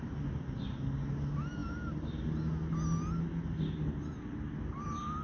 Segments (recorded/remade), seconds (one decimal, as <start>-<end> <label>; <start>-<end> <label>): 0.0-5.2 recorded